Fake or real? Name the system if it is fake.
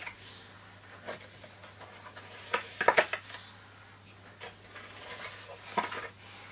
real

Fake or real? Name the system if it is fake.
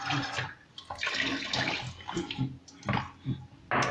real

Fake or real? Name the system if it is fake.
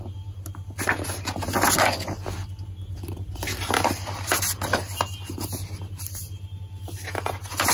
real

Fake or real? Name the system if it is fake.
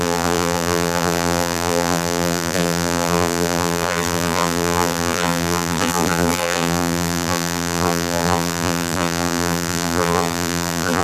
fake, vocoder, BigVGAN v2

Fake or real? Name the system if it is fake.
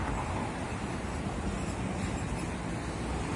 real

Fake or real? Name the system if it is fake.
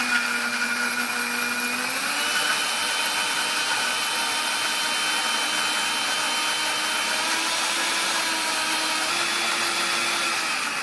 real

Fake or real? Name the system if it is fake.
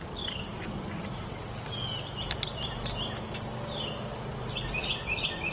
real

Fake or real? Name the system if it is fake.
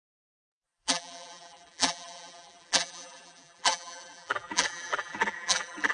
fake, vocoder, BigVGAN v2